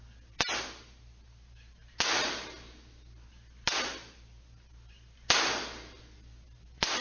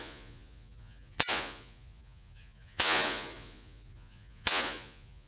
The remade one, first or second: second